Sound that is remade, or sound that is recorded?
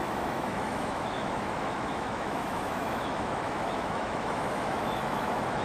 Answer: remade